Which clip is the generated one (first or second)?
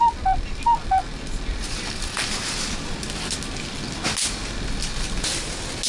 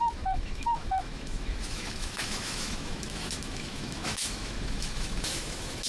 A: second